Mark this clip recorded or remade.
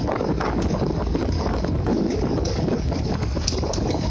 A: remade